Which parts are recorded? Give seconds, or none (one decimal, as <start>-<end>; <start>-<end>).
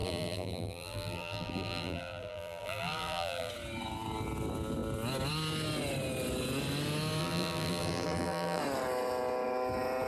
3.5-7.2; 8.6-10.1